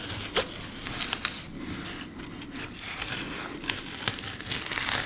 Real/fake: real